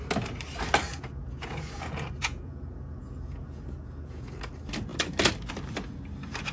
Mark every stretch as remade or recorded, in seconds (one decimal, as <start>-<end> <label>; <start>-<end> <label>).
0.0-0.9 recorded; 0.9-4.4 remade; 4.4-6.5 recorded